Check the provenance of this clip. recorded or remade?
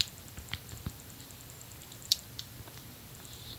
remade